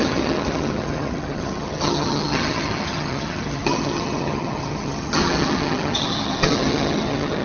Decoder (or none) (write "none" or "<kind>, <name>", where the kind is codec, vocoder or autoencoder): vocoder, HiFi-GAN